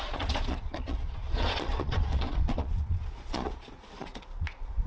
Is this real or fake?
fake